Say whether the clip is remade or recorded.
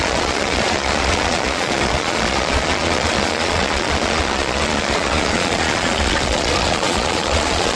remade